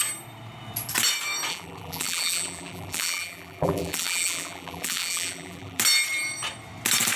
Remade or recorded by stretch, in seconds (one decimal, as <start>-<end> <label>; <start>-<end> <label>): 0.0-1.5 recorded; 1.5-5.8 remade; 5.8-7.2 recorded